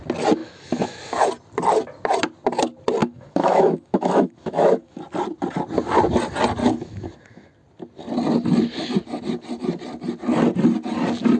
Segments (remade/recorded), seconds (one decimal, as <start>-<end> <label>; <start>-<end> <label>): 0.0-0.4 recorded; 0.4-1.0 remade; 1.0-3.0 recorded; 3.0-5.0 remade; 5.0-6.6 recorded; 6.6-7.5 remade; 7.5-11.4 recorded